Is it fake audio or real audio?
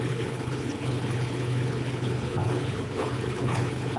fake